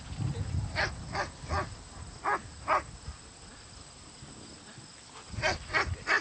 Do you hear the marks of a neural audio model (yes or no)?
no